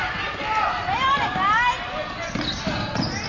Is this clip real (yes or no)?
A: yes